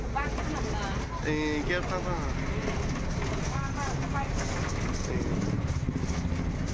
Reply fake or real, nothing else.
real